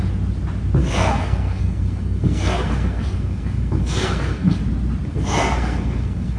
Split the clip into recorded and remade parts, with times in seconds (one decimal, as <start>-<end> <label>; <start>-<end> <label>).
0.0-0.8 recorded; 0.8-4.6 remade; 4.6-5.1 recorded; 5.1-6.4 remade